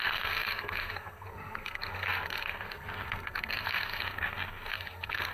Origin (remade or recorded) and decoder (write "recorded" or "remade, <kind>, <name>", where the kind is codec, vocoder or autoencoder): remade, codec, SNAC